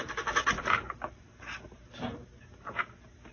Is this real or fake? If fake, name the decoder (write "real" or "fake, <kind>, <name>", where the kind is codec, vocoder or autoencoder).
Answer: real